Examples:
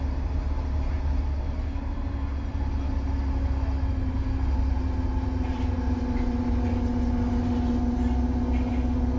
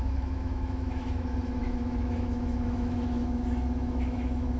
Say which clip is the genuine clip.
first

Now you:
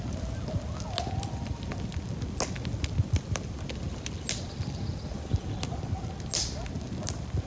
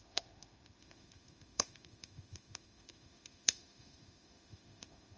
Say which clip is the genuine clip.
first